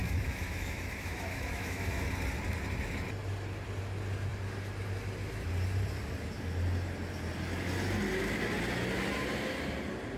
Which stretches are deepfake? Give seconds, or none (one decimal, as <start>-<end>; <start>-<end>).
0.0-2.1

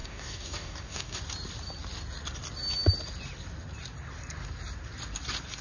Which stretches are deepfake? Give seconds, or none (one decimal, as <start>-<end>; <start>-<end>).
0.0-1.2

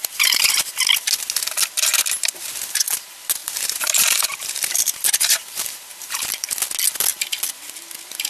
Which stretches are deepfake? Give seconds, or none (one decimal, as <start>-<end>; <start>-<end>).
0.0-0.7; 3.4-6.6

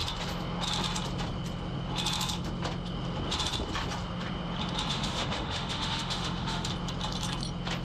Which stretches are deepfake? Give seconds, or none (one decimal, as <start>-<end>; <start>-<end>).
4.9-6.7

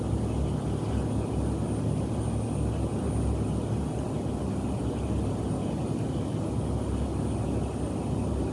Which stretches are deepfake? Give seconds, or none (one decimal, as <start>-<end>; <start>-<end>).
none

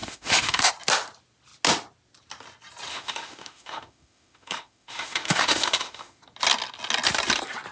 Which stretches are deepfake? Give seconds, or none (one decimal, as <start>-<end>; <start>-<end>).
0.0-0.7; 2.9-6.2

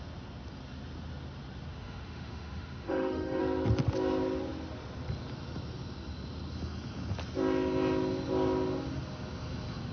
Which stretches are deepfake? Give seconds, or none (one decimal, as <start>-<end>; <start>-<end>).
1.7-3.4